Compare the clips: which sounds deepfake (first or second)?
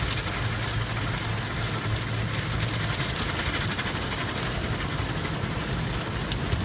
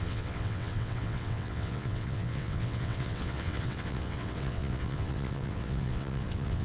second